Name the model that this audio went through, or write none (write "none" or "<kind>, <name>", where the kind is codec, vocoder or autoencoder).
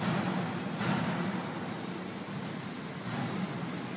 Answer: none